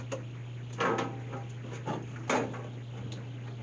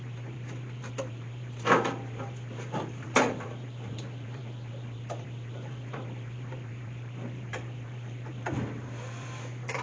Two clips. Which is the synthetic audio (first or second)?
second